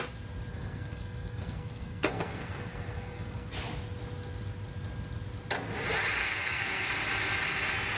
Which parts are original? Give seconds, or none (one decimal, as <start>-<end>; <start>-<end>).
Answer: 0.0-0.5; 3.5-6.2; 6.9-8.0